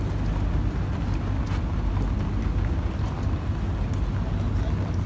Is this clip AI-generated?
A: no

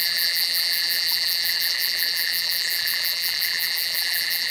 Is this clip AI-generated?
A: yes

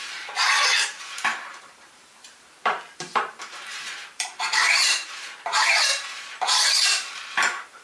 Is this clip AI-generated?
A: yes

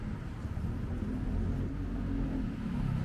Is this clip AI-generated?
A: no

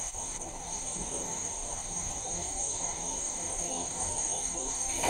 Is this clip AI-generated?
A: yes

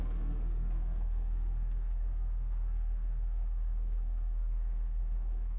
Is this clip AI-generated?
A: yes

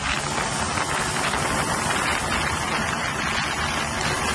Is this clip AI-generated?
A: no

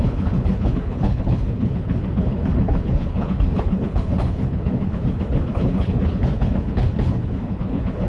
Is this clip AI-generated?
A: yes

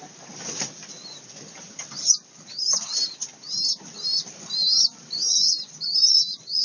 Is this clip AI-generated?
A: no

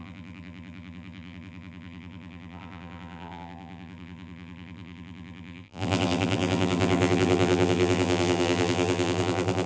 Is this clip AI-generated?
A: yes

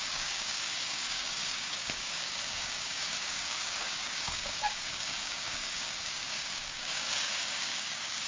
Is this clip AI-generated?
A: yes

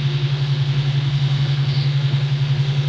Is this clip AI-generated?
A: yes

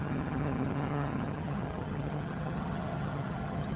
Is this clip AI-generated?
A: yes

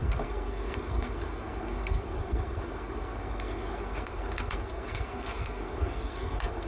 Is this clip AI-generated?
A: yes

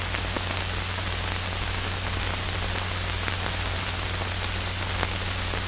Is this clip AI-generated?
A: no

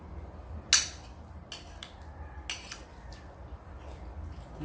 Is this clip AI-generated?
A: no